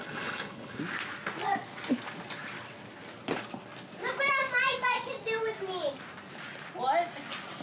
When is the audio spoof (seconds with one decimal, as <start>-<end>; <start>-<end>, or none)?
0.0-0.8